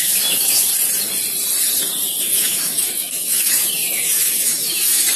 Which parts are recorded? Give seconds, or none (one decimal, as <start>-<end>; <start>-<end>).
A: 0.7-2.2